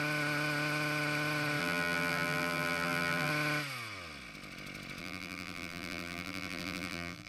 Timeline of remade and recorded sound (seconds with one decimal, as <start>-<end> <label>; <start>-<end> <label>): 0.0-1.6 recorded; 1.6-3.3 remade; 3.3-5.0 recorded; 5.0-7.3 remade